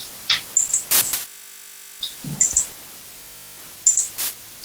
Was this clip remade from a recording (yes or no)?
no